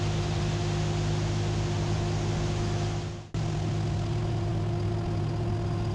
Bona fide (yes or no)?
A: yes